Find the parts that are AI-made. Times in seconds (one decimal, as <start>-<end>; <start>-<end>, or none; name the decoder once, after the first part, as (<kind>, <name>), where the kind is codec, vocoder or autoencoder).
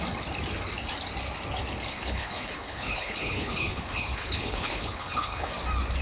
1.9-5.5 (codec, HILCodec)